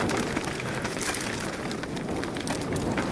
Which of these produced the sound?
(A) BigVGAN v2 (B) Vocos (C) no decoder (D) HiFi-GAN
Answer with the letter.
C